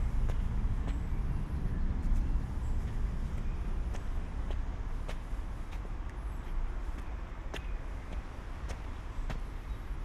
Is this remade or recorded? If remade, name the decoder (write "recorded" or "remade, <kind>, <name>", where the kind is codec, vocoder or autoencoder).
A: recorded